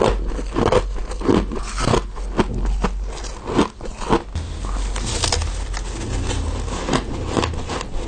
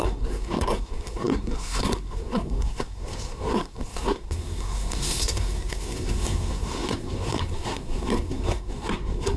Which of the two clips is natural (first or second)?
first